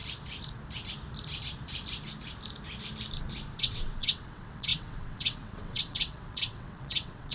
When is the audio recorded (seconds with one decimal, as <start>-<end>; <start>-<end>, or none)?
0.0-3.6

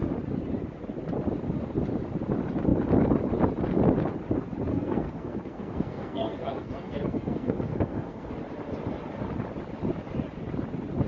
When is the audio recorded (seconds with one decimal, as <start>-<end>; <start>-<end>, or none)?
0.0-4.7; 8.3-11.1

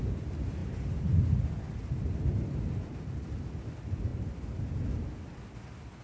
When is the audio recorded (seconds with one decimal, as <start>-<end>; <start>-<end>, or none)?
0.0-6.0

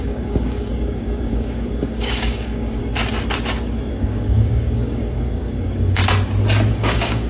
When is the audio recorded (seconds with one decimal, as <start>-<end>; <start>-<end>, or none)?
2.8-3.9; 6.0-6.7